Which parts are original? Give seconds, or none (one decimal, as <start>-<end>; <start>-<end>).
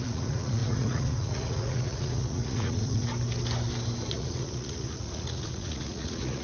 3.1-4.1